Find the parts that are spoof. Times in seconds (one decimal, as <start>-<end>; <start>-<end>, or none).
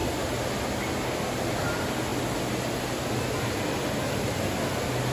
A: none